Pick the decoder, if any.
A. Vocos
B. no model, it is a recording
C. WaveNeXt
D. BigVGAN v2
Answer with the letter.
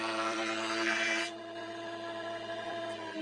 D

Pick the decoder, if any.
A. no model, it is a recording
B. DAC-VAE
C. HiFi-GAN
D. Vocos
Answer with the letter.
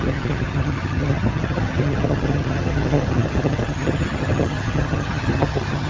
C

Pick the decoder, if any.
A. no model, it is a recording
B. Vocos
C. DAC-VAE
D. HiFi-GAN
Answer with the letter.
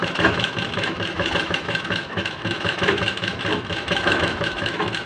C